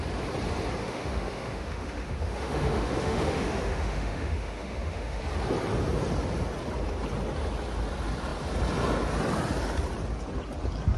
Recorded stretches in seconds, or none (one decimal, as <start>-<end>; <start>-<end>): 0.0-0.8; 5.2-11.0